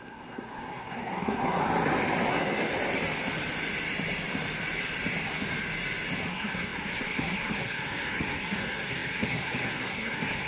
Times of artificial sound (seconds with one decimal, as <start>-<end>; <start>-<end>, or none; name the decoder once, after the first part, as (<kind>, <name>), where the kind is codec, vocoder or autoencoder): 0.0-1.6 (codec, SNAC); 2.3-2.7; 6.3-10.5